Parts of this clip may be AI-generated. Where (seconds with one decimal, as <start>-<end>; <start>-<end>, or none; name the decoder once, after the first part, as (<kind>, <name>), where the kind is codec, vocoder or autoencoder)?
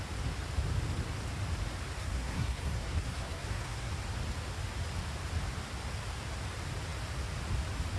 2.0-3.9 (codec, SNAC)